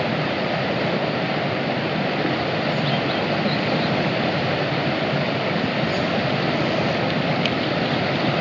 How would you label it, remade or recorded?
recorded